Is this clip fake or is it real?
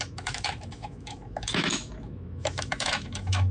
fake